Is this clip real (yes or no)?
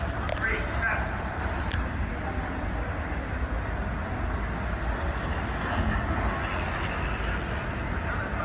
yes